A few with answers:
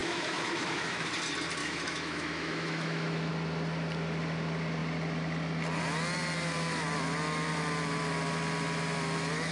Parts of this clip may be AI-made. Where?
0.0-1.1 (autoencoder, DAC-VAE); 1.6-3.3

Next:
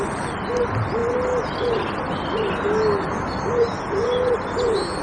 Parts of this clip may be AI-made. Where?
none

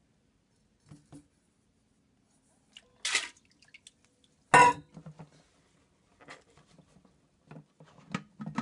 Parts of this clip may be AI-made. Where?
none

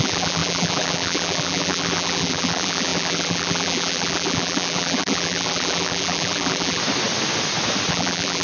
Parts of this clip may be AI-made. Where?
0.0-6.8 (vocoder, BigVGAN v2); 7.9-8.4